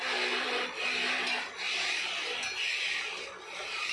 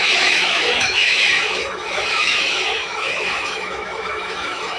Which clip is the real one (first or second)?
first